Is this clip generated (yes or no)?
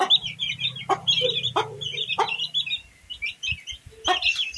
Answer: no